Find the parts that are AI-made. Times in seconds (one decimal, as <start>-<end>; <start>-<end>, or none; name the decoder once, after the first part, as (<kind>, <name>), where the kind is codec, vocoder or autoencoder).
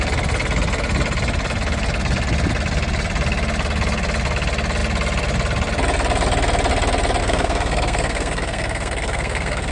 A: 7.2-9.7 (codec, SNAC)